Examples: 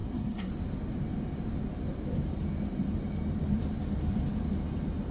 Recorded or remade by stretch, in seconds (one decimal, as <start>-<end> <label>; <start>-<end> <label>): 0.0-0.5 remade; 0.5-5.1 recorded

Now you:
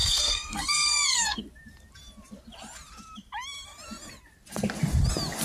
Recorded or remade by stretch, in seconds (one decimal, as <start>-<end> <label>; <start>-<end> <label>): 0.0-1.4 remade; 1.4-5.4 recorded

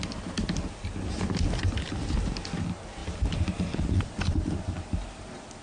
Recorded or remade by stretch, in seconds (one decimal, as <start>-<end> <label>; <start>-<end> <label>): 0.0-5.6 recorded

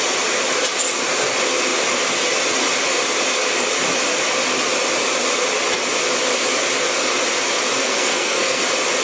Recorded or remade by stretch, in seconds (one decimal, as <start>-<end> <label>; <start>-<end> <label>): 0.0-7.8 recorded; 7.8-8.6 remade; 8.6-9.0 recorded

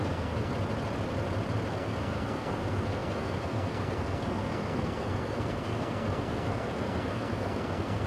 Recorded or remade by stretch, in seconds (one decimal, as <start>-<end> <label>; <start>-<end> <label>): 0.0-0.5 remade; 0.5-1.7 recorded; 1.7-8.1 remade

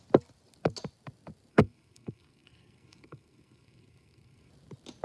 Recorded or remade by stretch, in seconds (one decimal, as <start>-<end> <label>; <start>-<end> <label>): 0.0-1.5 recorded; 1.5-4.5 remade; 4.5-5.0 recorded

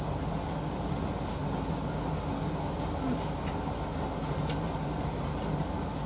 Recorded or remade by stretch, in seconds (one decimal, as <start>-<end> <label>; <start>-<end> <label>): 0.0-6.1 recorded

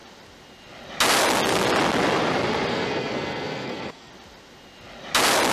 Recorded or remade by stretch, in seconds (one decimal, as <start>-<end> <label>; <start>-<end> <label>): 0.0-2.7 recorded; 2.7-4.1 remade; 4.1-5.5 recorded